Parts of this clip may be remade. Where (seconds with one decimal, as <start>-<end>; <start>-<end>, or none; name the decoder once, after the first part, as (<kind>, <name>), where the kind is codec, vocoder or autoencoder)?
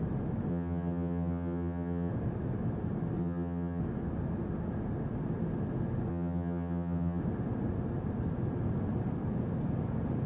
0.5-2.1 (vocoder, HiFi-GAN); 3.2-3.8; 6.1-7.2